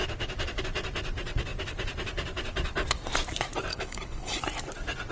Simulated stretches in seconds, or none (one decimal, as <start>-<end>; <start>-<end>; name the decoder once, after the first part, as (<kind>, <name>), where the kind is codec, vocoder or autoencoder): 3.7-4.4 (codec, HILCodec)